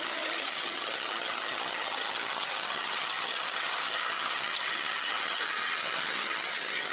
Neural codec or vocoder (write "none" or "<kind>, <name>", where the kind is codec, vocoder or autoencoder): vocoder, HiFi-GAN